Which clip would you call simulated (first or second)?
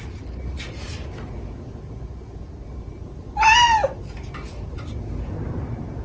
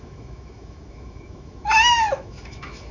second